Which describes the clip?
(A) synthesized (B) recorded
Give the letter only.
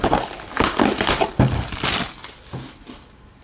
B